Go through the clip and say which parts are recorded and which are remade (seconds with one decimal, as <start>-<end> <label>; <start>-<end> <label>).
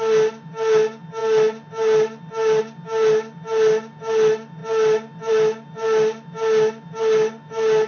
0.0-7.9 recorded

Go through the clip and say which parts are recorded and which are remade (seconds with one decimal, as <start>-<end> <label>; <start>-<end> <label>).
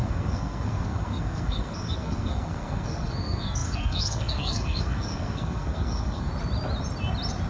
0.0-6.3 remade; 6.3-7.5 recorded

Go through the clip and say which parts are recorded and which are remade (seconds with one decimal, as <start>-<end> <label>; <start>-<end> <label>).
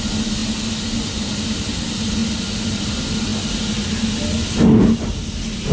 0.0-5.7 recorded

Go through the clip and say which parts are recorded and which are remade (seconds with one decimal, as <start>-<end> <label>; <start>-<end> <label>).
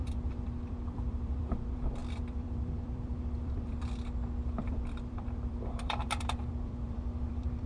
0.0-7.7 remade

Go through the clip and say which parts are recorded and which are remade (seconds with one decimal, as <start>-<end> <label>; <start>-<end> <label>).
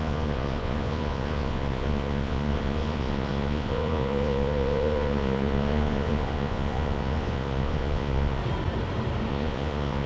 0.0-8.4 remade; 8.4-9.3 recorded; 9.3-10.1 remade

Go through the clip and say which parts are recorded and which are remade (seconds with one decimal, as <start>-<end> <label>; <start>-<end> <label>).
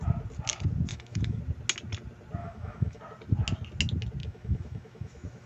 0.0-0.9 recorded; 0.9-1.4 remade; 1.4-2.4 recorded; 2.4-3.0 remade; 3.0-4.2 recorded; 4.2-5.5 remade